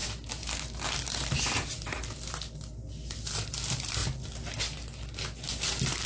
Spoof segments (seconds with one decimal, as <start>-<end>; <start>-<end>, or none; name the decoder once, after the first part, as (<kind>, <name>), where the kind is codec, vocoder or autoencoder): none